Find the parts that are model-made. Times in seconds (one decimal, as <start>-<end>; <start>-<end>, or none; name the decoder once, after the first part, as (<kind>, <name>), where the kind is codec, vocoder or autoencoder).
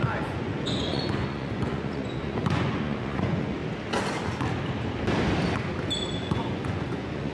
0.0-3.6 (vocoder, Vocos); 6.2-7.3